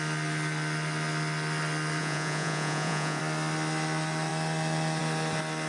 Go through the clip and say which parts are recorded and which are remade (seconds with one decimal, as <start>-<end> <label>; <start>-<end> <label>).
0.0-2.0 recorded; 2.0-3.2 remade; 3.2-5.7 recorded